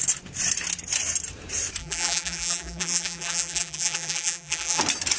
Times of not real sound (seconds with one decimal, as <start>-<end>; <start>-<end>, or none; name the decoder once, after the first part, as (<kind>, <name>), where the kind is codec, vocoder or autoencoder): 1.8-4.8 (vocoder, BigVGAN v2)